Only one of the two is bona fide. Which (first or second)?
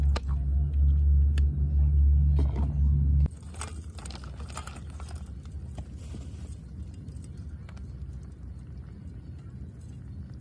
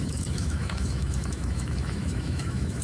first